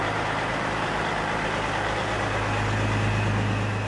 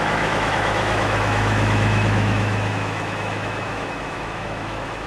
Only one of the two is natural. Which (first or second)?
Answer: first